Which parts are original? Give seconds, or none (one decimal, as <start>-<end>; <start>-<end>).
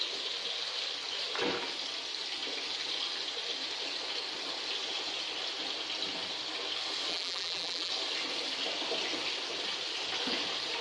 0.0-7.1; 7.9-10.8